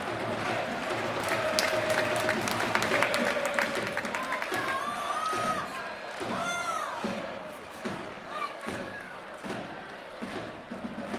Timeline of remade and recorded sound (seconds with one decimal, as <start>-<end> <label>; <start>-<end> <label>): 0.0-6.4 recorded; 6.4-9.2 remade; 9.2-11.2 recorded